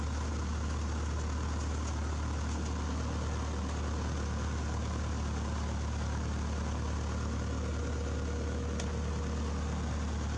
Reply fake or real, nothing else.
real